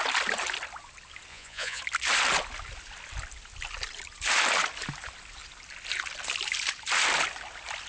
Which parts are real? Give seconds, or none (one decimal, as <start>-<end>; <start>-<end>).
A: 0.0-1.3; 1.8-7.9